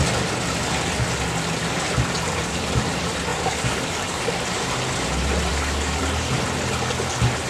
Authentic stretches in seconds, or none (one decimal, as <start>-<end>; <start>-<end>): 0.0-3.3; 4.3-5.5; 6.0-7.5